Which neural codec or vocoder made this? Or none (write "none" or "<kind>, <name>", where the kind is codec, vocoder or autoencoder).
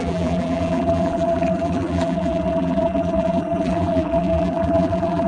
vocoder, BigVGAN v2